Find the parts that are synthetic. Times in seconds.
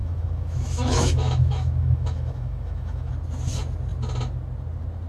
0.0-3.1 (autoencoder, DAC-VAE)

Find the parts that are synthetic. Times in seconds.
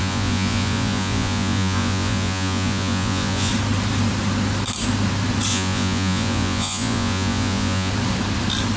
0.0-3.5 (vocoder, Vocos); 5.5-7.9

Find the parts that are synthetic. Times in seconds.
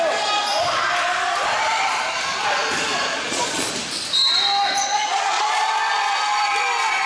3.1-3.7 (vocoder, Vocos); 4.8-5.5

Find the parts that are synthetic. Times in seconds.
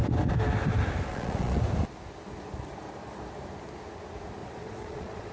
1.1-1.6 (vocoder, Vocos); 4.4-5.3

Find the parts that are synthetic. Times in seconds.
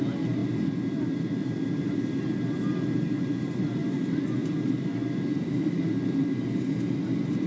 none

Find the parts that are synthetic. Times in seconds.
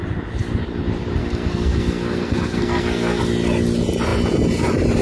1.2-3.2 (codec, SNAC)